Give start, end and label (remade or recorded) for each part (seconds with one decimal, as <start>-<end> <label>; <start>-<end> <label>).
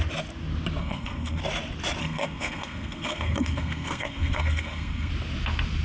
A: 0.0-0.8 recorded; 0.8-1.4 remade; 1.4-2.0 recorded; 2.0-5.1 remade; 5.1-5.8 recorded